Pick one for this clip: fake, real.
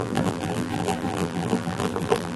fake